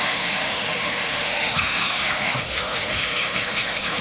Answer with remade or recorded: remade